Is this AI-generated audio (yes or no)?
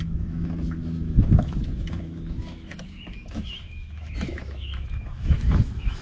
yes